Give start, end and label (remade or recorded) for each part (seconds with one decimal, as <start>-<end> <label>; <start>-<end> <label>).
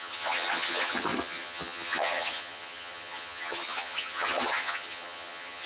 0.0-5.7 remade